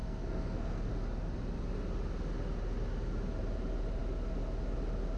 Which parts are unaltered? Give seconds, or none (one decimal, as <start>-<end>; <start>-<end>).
0.9-5.2